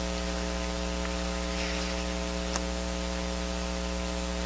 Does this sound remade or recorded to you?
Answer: recorded